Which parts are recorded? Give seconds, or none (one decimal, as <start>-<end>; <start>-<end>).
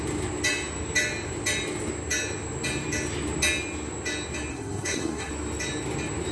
0.0-4.5; 5.3-6.3